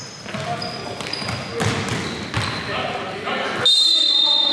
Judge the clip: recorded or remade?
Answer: recorded